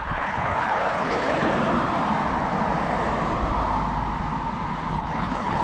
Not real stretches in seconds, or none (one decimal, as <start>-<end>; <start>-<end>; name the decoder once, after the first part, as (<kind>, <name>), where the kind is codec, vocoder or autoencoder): 0.0-1.5 (codec, HILCodec); 4.9-5.6

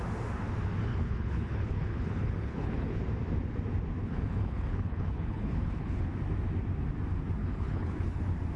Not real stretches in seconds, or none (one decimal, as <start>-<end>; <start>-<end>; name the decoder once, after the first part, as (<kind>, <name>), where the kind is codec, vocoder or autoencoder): 0.9-3.0 (codec, HILCodec); 4.0-6.1; 7.4-8.2